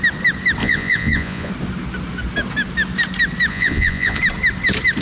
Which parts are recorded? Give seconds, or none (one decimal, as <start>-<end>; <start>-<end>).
0.0-0.6; 1.5-3.5; 4.2-5.0